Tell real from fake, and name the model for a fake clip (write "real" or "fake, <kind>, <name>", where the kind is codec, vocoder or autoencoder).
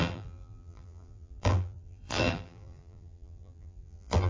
fake, vocoder, BigVGAN v2